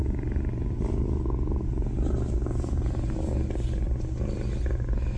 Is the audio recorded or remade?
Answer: recorded